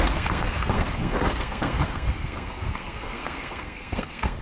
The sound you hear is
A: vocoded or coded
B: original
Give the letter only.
A